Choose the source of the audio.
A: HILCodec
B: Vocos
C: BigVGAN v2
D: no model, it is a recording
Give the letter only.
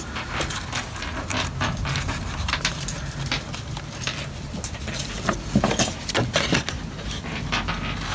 D